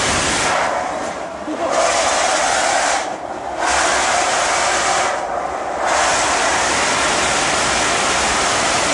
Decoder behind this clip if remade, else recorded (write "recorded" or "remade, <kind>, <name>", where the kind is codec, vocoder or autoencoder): recorded